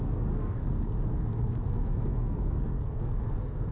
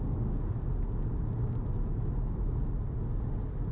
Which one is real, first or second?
second